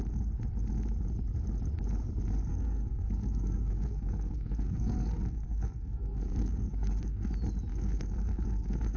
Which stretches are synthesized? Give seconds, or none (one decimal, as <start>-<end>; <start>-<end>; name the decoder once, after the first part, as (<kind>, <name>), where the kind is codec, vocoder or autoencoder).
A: 2.5-7.3 (codec, SNAC); 7.7-9.0